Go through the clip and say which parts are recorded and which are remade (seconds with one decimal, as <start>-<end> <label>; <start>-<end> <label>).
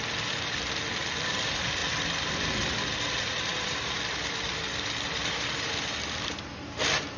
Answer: 0.0-7.2 recorded